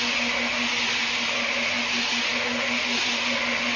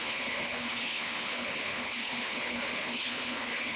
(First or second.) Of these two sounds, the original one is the first